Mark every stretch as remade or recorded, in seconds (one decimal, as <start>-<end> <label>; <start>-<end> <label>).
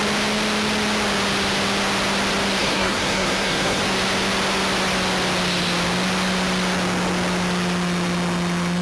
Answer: 0.0-2.6 recorded; 2.6-3.8 remade; 3.8-8.8 recorded